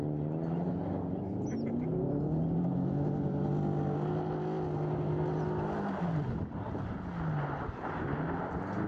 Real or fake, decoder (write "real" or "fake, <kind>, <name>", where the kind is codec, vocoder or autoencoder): real